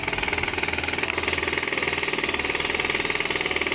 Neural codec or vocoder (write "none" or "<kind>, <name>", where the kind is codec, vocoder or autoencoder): vocoder, BigVGAN v2